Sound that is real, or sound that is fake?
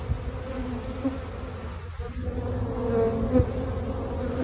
real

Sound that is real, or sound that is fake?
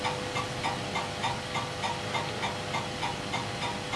real